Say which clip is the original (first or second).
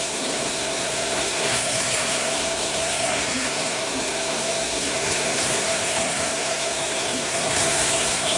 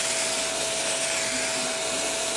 second